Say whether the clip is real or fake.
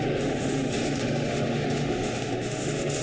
fake